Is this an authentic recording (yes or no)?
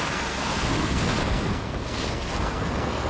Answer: no